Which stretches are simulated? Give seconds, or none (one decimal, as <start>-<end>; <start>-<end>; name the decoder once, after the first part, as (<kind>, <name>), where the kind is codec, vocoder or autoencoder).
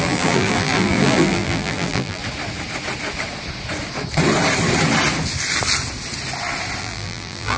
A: 0.0-2.2 (vocoder, BigVGAN v2); 6.8-7.6